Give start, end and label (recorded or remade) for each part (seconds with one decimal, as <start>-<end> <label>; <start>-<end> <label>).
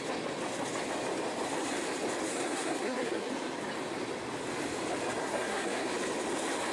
0.0-2.3 recorded; 2.3-3.3 remade; 3.3-5.2 recorded; 5.2-5.9 remade; 5.9-6.7 recorded